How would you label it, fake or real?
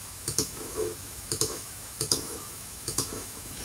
fake